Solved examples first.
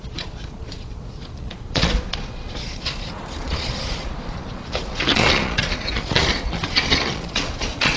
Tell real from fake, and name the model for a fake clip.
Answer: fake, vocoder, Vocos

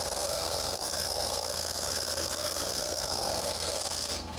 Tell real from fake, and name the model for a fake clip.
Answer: fake, codec, SNAC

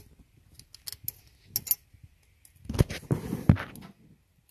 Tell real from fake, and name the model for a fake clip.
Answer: real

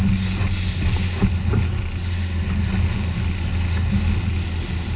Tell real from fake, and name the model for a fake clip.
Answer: real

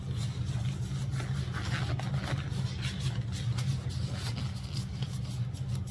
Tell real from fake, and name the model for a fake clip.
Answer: real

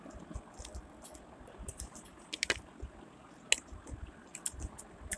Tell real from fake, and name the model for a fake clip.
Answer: real